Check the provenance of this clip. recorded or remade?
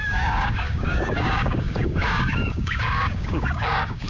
remade